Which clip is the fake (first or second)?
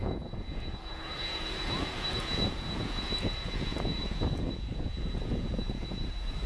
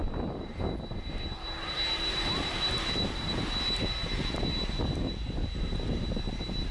first